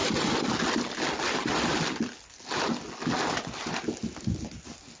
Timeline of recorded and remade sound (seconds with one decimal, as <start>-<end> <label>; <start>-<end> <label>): 0.0-0.7 remade; 0.7-5.0 recorded